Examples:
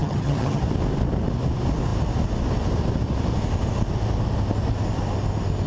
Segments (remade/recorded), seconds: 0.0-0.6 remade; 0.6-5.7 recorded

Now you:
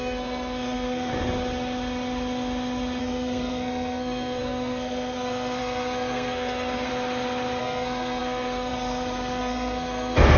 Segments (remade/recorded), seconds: 0.0-1.1 remade; 1.1-3.0 recorded; 3.0-6.9 remade; 6.9-7.6 recorded; 7.6-10.4 remade